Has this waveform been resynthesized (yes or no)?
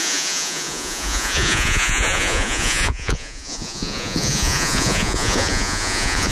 yes